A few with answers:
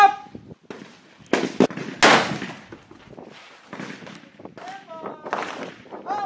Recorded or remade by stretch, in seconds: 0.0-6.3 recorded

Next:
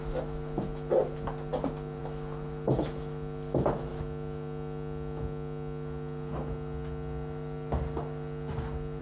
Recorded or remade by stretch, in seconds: 0.0-9.0 recorded